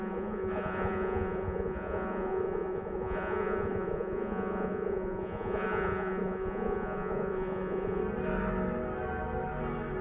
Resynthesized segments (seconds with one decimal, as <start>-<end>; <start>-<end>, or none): 0.0-8.0